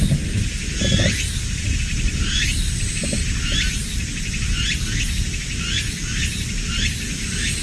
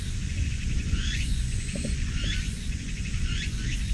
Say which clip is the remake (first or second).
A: second